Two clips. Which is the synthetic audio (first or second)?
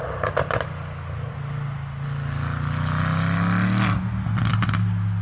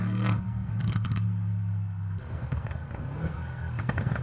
second